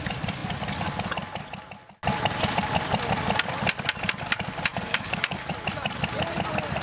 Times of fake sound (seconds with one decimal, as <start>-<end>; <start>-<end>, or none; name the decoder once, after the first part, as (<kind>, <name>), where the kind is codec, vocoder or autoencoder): 4.7-5.5 (codec, DAC)